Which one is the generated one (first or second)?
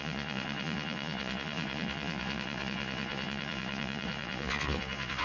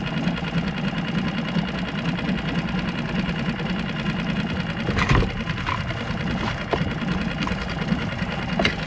first